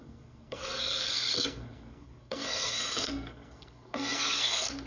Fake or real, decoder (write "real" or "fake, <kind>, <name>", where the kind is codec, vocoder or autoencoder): fake, codec, SNAC